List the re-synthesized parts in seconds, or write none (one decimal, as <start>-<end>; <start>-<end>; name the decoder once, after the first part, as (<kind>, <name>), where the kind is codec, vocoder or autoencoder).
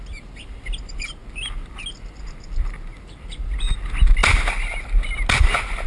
none